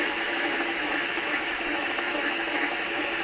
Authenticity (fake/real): fake